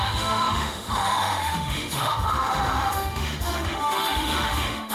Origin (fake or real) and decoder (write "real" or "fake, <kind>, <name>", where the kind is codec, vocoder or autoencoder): fake, autoencoder, DAC-VAE